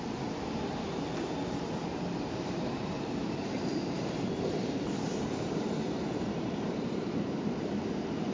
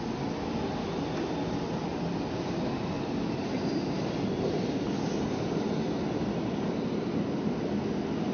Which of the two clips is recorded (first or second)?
second